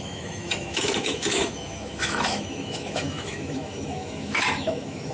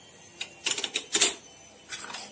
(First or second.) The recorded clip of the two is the second